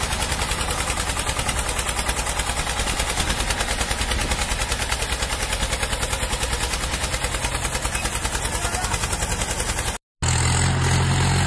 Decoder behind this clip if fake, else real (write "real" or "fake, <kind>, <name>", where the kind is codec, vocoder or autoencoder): real